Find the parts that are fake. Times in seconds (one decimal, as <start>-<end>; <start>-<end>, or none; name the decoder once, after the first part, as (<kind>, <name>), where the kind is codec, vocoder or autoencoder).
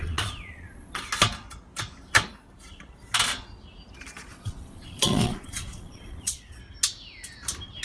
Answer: 0.0-1.0 (vocoder, Vocos); 4.3-6.6